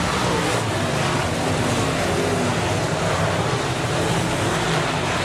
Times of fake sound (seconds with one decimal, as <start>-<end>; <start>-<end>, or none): none